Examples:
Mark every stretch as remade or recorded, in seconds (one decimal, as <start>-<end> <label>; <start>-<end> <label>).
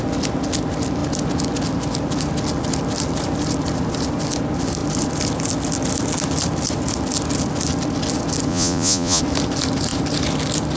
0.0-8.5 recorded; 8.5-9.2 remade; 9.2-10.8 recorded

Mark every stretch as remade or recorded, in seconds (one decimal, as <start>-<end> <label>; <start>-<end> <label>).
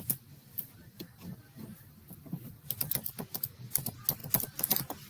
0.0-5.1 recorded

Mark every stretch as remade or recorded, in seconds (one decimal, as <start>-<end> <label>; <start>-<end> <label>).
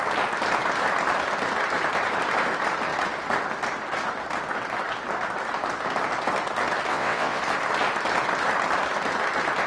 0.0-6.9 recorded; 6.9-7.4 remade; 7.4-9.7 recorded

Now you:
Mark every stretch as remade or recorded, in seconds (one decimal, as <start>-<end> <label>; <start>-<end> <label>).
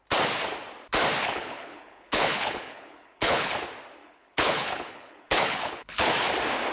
0.0-1.2 recorded; 1.2-3.5 remade; 3.5-4.0 recorded; 4.0-6.1 remade; 6.1-6.7 recorded